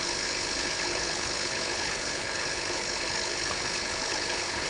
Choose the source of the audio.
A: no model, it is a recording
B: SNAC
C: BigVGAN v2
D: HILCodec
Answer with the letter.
D